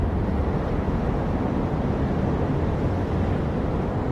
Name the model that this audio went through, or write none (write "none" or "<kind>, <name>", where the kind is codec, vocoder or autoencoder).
none